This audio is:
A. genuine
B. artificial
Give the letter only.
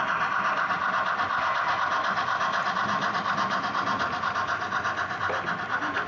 A